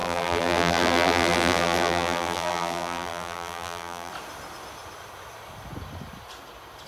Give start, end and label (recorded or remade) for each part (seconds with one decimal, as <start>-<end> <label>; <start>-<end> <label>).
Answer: 0.0-4.1 remade; 4.1-6.9 recorded